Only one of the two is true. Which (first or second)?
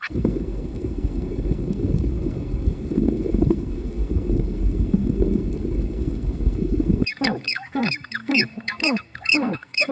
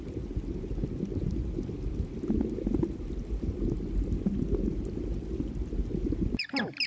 second